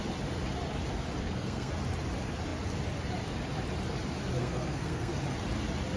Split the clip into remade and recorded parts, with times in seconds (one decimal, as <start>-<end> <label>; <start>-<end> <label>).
0.0-1.2 recorded; 1.2-1.7 remade; 1.7-4.4 recorded; 4.4-5.1 remade; 5.1-6.0 recorded